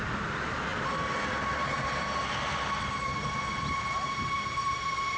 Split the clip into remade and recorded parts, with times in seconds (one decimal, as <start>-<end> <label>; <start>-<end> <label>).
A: 0.0-5.2 recorded